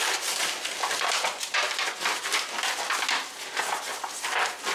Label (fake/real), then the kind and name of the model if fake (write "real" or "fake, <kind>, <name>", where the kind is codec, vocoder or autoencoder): real